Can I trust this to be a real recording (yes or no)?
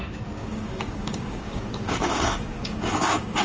no